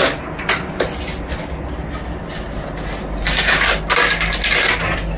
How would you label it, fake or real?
real